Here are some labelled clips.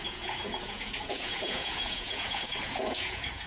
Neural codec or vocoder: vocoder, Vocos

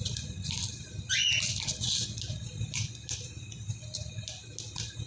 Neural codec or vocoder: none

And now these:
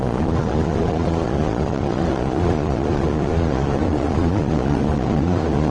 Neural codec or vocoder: vocoder, Vocos